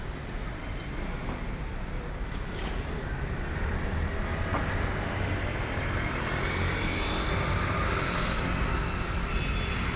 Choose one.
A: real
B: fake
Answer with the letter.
A